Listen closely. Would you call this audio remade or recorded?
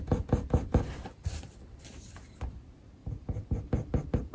recorded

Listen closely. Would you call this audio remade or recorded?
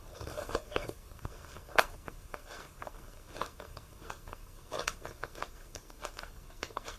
remade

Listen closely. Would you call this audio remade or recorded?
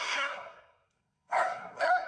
remade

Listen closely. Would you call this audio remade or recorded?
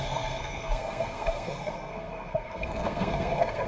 remade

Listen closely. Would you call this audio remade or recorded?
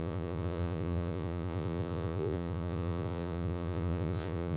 remade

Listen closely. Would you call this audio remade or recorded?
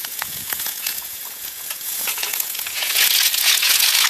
remade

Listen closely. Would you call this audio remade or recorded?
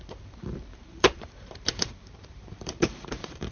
remade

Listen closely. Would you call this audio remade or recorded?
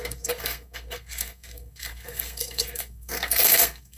remade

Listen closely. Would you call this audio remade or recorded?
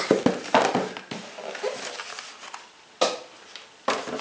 recorded